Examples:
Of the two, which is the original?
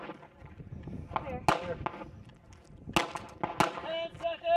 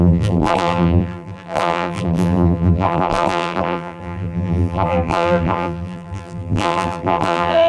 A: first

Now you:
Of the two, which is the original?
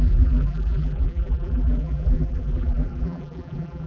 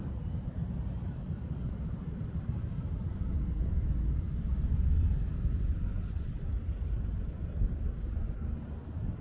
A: second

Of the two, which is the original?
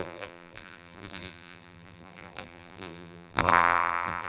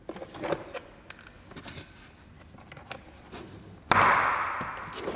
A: second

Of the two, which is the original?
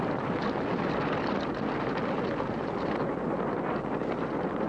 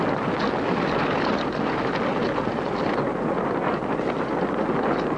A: second